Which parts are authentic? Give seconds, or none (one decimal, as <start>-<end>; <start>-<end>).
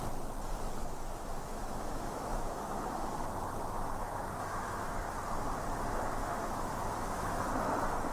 0.0-0.8; 5.0-6.2; 7.5-8.1